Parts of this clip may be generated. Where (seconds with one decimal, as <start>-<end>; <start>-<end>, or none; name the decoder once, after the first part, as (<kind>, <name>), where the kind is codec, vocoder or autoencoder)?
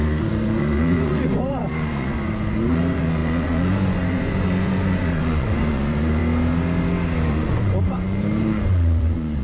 0.0-6.2 (vocoder, Vocos); 7.3-9.4